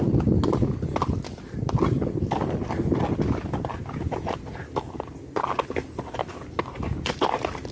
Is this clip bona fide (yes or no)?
yes